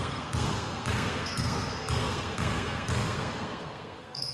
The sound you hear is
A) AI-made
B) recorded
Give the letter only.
A